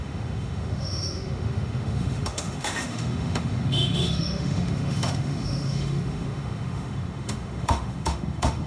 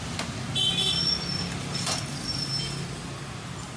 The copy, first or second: first